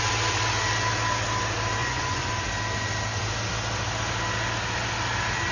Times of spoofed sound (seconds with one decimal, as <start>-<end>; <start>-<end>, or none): 1.8-2.3

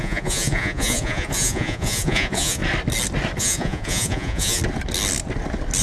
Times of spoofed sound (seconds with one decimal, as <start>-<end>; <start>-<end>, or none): 0.0-2.6; 3.4-4.6